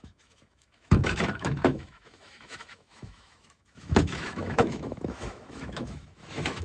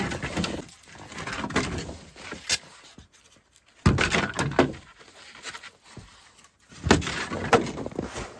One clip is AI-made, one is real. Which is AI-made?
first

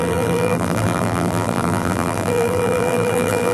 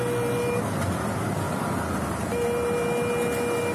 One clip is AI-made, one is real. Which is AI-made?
first